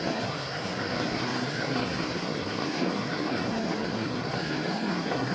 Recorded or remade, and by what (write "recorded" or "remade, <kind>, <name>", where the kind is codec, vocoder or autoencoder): remade, codec, SNAC